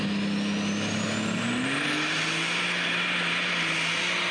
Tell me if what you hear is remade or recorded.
recorded